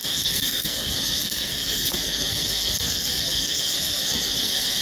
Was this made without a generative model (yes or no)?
no